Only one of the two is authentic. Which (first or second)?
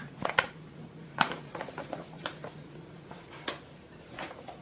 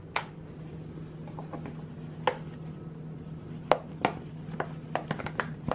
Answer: second